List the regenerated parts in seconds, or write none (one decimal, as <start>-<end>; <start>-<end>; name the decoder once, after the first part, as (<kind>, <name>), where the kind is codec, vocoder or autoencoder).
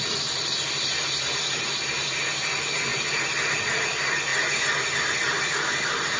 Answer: 2.9-3.5 (vocoder, BigVGAN v2)